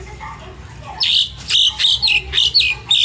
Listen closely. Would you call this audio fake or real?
real